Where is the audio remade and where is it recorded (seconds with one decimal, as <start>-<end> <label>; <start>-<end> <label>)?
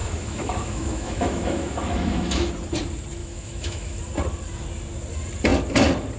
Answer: 0.0-2.5 remade; 2.5-3.2 recorded; 3.2-4.0 remade; 4.0-6.2 recorded